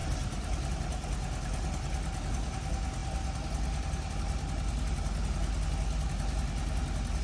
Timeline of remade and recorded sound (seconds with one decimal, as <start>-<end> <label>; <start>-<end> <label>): 0.0-7.2 recorded